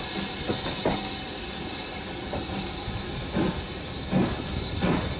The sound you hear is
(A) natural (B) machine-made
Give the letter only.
A